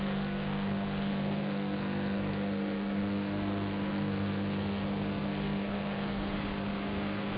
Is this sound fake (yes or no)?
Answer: yes